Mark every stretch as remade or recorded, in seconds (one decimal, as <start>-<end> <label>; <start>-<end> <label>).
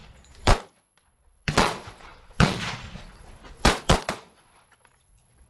0.0-5.5 remade